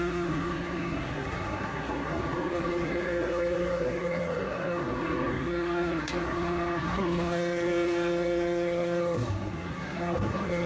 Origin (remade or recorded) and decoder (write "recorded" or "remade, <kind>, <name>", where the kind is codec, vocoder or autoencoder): remade, codec, SNAC